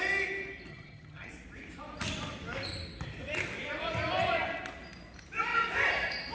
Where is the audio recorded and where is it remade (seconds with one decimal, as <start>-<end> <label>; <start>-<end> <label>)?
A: 0.0-0.7 recorded; 0.7-1.3 remade; 1.3-6.3 recorded